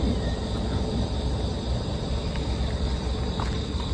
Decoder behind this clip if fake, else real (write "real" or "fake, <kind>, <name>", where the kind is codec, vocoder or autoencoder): real